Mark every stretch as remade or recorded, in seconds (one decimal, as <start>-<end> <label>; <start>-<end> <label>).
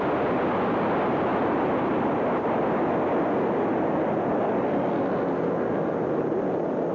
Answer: 0.0-1.3 recorded; 1.3-2.0 remade; 2.0-6.9 recorded